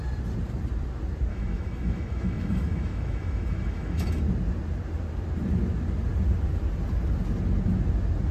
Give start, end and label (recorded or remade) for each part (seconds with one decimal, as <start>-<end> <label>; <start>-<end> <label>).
0.0-1.3 recorded; 1.3-4.2 remade; 4.2-8.3 recorded